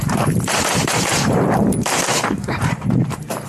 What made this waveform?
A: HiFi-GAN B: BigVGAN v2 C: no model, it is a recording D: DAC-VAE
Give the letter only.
B